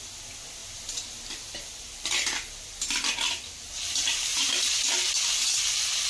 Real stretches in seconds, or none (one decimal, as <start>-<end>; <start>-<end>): 0.0-4.3; 4.9-6.1